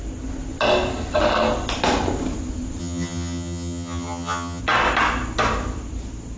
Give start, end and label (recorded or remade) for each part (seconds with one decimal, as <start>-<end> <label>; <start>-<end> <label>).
0.0-2.8 recorded; 2.8-4.6 remade; 4.6-6.4 recorded